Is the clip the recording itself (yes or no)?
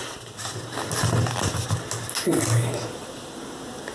yes